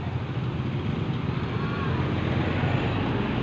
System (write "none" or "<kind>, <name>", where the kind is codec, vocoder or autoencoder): none